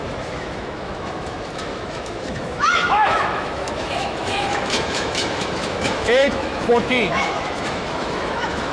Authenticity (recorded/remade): remade